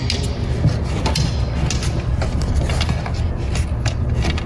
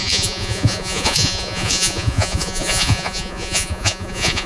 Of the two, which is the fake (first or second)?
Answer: second